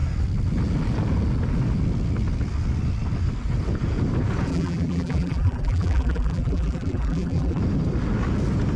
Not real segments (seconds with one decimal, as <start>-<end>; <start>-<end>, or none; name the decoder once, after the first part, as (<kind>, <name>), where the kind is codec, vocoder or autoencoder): 4.5-7.6 (vocoder, BigVGAN v2)